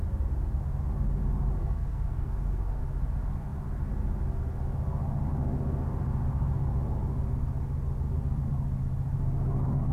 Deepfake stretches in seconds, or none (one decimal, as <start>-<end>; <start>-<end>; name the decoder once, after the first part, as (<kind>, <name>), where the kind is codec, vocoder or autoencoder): 1.6-2.8 (codec, SNAC)